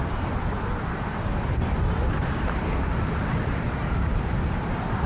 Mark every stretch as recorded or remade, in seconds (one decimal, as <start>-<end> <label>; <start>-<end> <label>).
0.0-5.1 remade